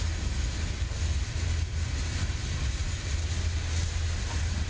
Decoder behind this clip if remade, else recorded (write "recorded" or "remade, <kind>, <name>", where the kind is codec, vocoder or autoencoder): recorded